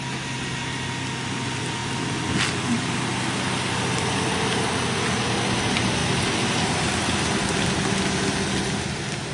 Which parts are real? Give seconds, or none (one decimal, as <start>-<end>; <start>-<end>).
0.0-9.3